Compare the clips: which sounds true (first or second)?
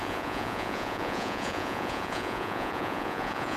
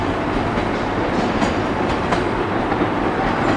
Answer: second